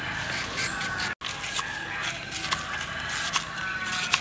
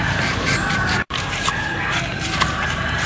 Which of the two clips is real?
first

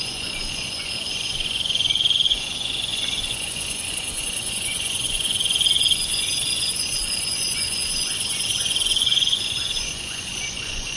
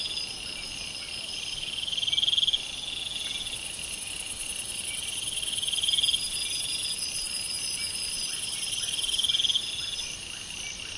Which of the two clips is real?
second